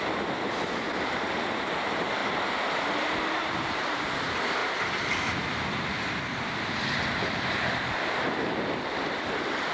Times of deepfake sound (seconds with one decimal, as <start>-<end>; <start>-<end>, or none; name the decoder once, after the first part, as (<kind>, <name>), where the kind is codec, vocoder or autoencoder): 0.0-2.2 (vocoder, BigVGAN v2); 3.5-9.7